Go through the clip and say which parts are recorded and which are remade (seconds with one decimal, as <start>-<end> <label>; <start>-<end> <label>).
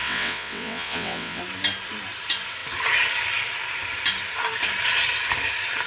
0.0-1.4 remade; 1.4-5.9 recorded